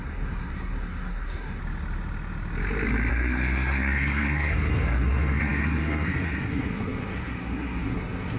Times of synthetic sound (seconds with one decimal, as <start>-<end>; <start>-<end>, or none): 0.0-1.6; 3.1-8.4